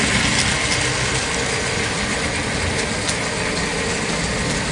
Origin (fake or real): real